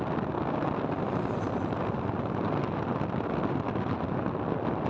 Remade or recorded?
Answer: recorded